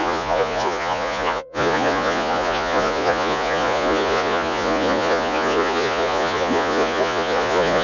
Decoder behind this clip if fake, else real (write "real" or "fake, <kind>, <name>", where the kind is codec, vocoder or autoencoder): fake, vocoder, Vocos